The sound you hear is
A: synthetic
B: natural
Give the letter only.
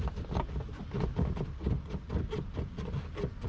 B